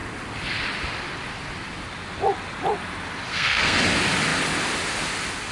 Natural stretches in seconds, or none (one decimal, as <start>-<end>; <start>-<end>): 0.0-3.3; 3.8-5.5